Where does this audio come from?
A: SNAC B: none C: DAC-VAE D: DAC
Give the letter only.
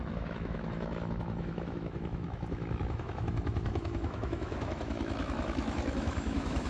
C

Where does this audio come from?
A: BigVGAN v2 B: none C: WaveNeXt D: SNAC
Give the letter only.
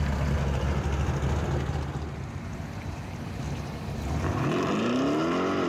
B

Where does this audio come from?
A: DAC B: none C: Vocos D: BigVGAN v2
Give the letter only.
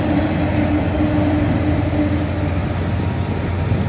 B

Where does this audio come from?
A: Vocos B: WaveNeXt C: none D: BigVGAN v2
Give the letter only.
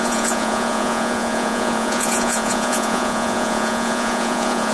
A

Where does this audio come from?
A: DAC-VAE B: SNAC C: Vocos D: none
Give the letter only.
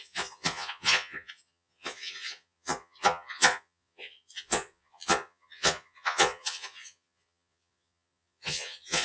C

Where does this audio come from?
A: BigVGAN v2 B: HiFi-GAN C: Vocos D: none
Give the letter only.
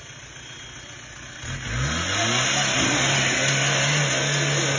D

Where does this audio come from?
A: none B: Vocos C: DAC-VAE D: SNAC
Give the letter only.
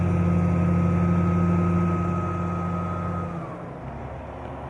A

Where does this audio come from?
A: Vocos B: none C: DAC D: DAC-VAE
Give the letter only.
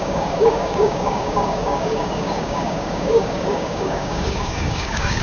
C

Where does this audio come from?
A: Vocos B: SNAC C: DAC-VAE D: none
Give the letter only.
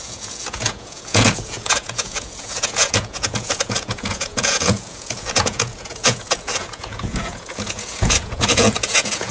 A